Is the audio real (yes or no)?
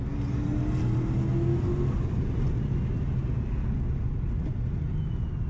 yes